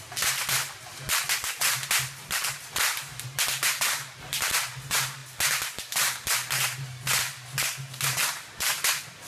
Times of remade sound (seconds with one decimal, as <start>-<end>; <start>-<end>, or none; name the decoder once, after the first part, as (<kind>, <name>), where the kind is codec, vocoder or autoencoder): none